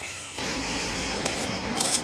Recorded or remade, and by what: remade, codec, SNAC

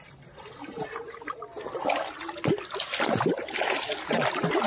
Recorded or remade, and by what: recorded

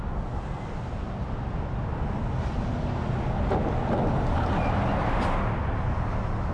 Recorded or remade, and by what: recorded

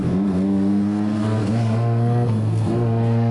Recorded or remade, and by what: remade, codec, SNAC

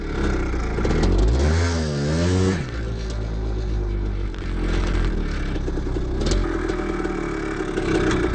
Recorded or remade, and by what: recorded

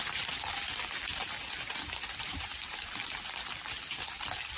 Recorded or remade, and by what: recorded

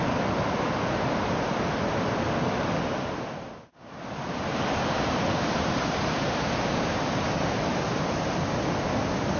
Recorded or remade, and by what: recorded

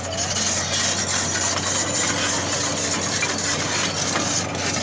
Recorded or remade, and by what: recorded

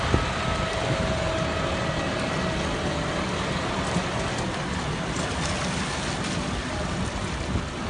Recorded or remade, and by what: recorded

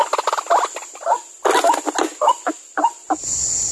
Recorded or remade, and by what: recorded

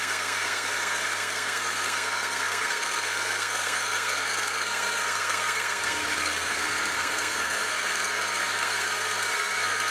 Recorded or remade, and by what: remade, codec, SNAC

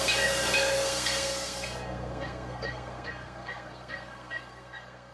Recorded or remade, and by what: remade, codec, SNAC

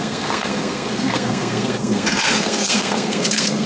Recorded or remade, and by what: remade, codec, SNAC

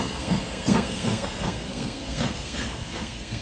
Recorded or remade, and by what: remade, codec, SNAC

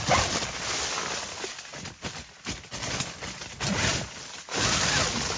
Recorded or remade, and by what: recorded